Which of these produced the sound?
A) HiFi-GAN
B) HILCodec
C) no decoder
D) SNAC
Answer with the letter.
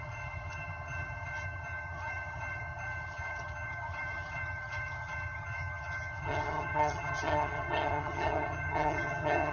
A